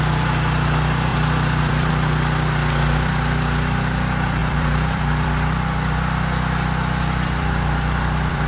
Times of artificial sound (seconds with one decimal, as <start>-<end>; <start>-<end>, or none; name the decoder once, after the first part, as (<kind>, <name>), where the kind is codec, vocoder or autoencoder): 1.1-1.9 (vocoder, BigVGAN v2); 4.4-8.5